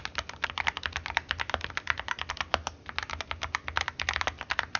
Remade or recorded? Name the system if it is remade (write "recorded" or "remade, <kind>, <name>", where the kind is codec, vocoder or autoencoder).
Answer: recorded